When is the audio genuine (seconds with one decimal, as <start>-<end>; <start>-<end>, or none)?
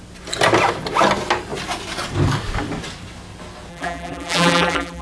0.0-3.7